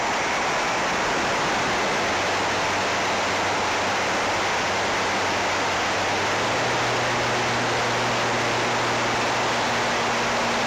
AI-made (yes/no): no